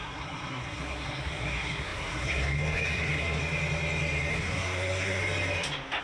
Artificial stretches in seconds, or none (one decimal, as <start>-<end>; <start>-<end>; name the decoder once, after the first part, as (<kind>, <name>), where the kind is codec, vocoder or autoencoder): 0.0-3.4 (codec, SNAC); 4.3-5.2